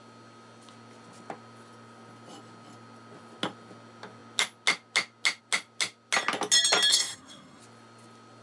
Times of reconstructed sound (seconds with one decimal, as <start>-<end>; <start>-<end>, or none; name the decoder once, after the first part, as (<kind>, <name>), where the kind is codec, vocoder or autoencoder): 6.9-7.6 (codec, SNAC)